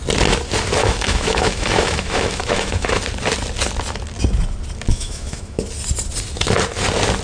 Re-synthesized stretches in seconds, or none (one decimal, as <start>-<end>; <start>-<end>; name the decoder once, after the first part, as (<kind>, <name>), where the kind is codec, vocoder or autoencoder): 0.8-3.0 (autoencoder, DAC-VAE); 4.9-5.6